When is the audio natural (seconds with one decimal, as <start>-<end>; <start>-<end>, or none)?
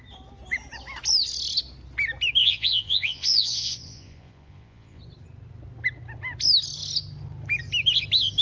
0.0-2.4; 5.0-8.4